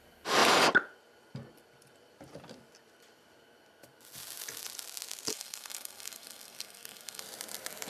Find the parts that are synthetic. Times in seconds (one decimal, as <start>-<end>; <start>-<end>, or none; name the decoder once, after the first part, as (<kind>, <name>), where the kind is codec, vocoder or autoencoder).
5.3-7.2 (codec, SNAC)